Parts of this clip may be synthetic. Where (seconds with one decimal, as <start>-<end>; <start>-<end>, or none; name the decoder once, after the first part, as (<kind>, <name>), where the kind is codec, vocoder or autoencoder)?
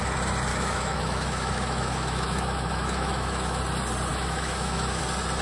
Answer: 0.5-3.6 (autoencoder, DAC-VAE); 4.1-5.0